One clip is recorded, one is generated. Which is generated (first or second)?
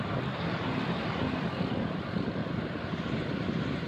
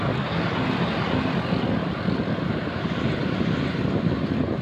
first